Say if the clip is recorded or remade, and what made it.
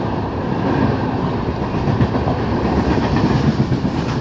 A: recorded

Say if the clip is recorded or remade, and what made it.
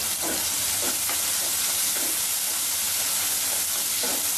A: recorded